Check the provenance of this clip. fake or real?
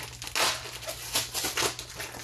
real